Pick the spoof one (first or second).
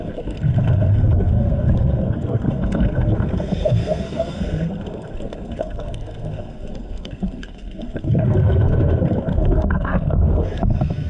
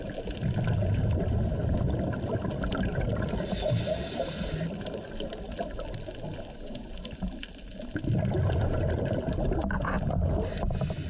first